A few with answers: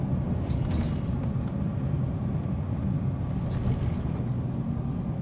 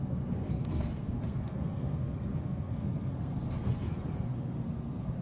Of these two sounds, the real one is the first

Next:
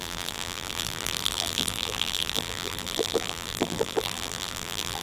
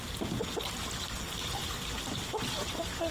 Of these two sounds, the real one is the second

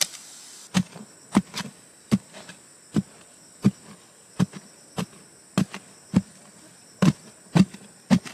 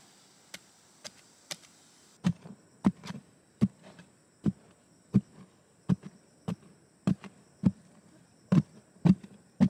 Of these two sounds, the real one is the first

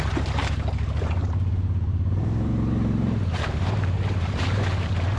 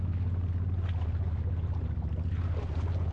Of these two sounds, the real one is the second